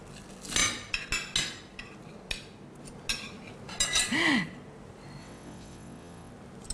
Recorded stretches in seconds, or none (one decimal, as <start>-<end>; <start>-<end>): 0.0-5.2; 6.3-6.7